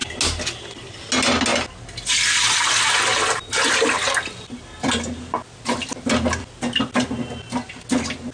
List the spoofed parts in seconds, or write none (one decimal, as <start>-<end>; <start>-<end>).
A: none